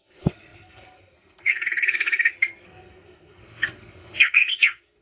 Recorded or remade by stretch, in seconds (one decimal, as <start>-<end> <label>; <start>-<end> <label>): 0.0-5.0 remade